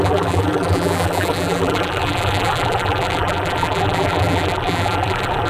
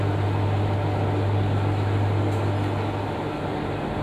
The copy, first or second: first